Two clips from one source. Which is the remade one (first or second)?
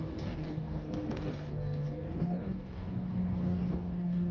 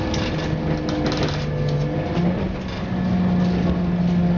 first